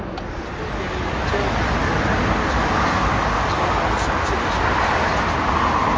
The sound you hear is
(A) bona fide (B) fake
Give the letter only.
A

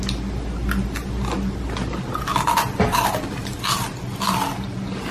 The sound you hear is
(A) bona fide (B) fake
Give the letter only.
A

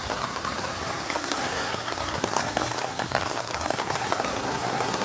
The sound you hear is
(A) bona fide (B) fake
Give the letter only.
B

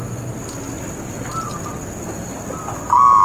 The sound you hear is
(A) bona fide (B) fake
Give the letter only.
A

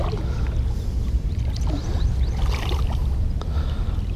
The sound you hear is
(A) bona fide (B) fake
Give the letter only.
A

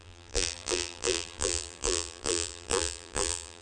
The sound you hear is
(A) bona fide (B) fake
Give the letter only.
B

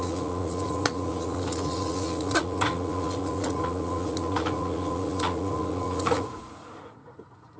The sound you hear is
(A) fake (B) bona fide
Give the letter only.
A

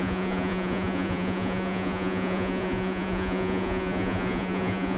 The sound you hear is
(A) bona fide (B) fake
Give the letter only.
B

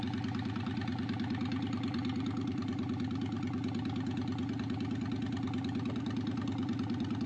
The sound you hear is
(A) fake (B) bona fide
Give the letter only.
A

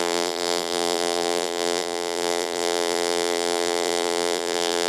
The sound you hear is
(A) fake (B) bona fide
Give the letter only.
A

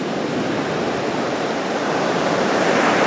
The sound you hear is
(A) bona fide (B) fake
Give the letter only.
A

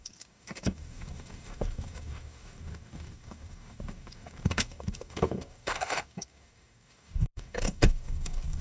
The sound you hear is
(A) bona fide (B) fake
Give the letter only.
B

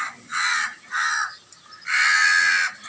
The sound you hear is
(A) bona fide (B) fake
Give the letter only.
A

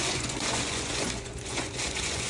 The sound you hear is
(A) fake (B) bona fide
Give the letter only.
A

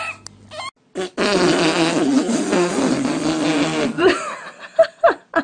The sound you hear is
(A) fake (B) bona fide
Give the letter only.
B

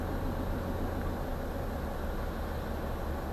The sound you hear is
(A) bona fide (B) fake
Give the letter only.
A